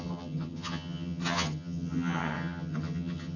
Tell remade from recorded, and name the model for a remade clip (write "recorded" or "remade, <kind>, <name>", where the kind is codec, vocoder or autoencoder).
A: remade, vocoder, HiFi-GAN